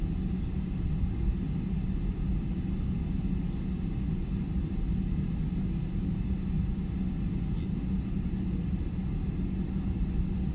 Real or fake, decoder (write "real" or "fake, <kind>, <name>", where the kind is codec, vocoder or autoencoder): real